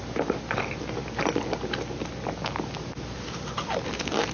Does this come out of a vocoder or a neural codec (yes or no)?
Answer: no